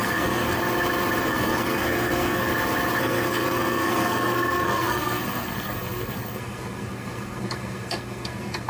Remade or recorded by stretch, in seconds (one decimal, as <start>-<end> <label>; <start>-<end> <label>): 0.0-0.6 remade; 0.6-1.2 recorded; 1.2-2.5 remade; 2.5-3.0 recorded; 3.0-8.7 remade